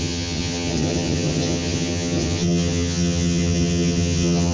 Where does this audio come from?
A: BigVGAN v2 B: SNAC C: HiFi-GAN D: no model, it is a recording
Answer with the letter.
C